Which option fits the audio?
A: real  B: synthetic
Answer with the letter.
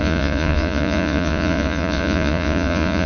B